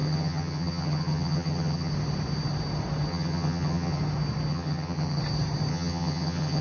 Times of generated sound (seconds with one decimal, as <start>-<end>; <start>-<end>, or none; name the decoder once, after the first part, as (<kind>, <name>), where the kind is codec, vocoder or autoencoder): 0.0-1.9 (vocoder, HiFi-GAN); 3.1-4.0; 4.5-5.2; 5.7-6.6